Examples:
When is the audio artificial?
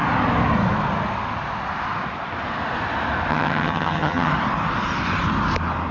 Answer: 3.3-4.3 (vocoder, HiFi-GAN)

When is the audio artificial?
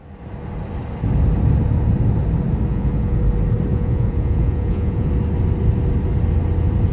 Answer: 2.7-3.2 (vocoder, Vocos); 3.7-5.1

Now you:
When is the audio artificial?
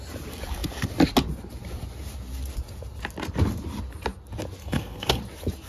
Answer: 4.6-5.2 (codec, SNAC)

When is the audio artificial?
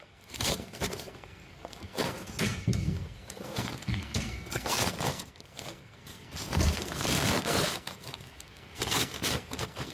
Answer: 0.0-9.9 (codec, SNAC)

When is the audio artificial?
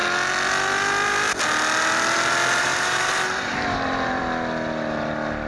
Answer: 2.6-4.2 (vocoder, BigVGAN v2)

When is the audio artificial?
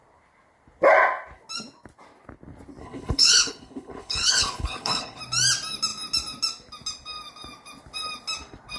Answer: 2.8-5.2 (codec, HILCodec)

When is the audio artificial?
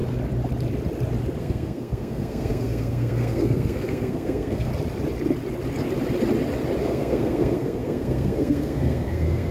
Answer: 1.4-4.7 (codec, SNAC); 6.8-9.5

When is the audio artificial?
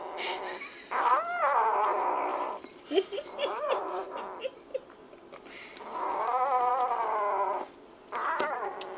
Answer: 2.3-4.2 (vocoder, BigVGAN v2)